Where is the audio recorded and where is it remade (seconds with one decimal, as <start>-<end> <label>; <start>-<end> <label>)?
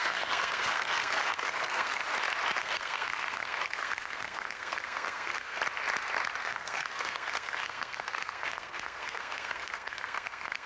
0.0-2.0 remade; 2.0-2.6 recorded; 2.6-5.6 remade; 5.6-6.4 recorded; 6.4-10.7 remade